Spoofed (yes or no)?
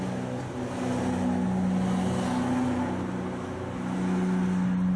no